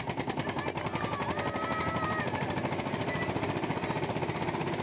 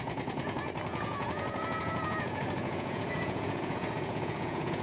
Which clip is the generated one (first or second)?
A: second